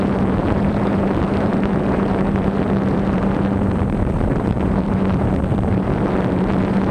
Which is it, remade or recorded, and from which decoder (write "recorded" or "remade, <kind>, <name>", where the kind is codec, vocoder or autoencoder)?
remade, vocoder, BigVGAN v2